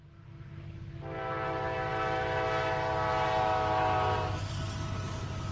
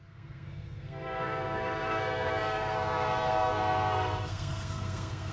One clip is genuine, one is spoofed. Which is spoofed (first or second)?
second